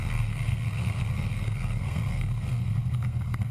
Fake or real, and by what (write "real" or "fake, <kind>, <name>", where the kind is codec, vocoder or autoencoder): fake, codec, SNAC